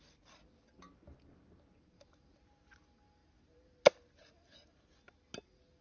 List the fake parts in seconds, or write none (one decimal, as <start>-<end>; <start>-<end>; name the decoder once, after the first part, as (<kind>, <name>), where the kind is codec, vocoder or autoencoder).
none